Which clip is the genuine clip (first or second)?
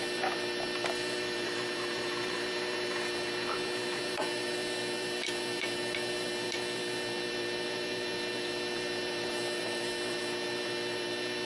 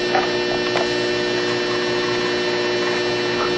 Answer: second